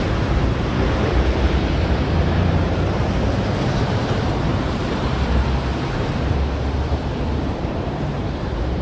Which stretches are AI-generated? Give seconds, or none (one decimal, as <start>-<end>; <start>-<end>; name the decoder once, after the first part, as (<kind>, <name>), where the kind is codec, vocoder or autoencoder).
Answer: 0.0-8.8 (vocoder, BigVGAN v2)